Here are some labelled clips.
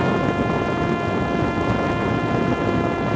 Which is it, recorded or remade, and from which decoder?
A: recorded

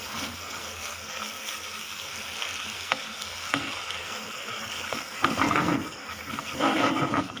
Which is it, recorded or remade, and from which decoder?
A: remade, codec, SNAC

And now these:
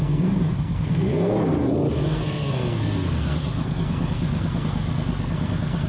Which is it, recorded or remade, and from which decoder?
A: remade, codec, SNAC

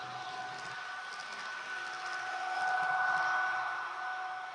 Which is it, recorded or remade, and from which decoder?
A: recorded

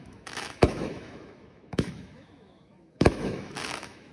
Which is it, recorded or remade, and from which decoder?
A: remade, autoencoder, DAC-VAE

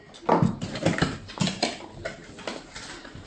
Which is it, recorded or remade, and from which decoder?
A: recorded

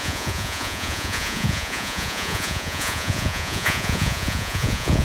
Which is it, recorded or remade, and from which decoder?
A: remade, vocoder, Vocos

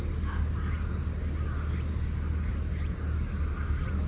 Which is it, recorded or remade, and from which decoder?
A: recorded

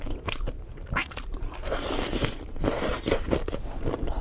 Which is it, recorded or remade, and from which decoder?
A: remade, vocoder, BigVGAN v2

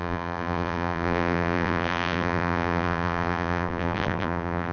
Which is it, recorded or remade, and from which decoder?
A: remade, vocoder, BigVGAN v2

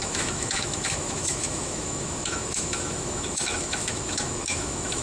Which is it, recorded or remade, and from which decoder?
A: remade, autoencoder, DAC-VAE